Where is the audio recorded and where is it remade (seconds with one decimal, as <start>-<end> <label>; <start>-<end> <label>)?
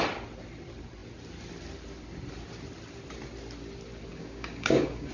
0.0-4.1 recorded; 4.1-5.1 remade